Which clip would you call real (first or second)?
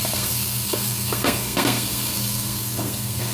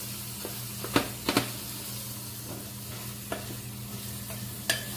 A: second